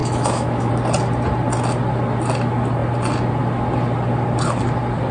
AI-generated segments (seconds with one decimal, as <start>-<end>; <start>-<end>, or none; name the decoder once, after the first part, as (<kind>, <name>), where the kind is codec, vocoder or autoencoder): 0.0-0.7 (autoencoder, DAC-VAE)